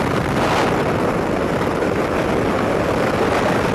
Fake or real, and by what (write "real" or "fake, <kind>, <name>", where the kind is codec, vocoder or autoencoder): real